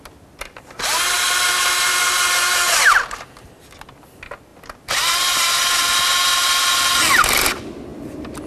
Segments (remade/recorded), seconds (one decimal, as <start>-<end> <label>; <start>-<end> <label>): 0.0-8.5 recorded